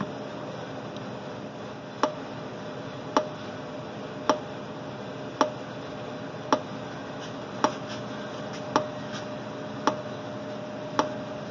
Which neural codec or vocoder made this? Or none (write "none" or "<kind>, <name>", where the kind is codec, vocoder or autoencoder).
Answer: none